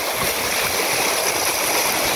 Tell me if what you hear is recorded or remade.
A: recorded